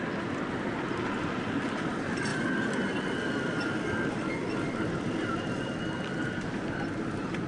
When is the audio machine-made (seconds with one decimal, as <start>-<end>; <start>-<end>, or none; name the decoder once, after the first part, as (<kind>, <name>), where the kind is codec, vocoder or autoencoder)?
none